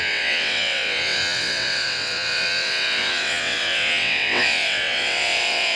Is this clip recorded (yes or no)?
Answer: no